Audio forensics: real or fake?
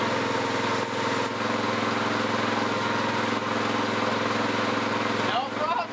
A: real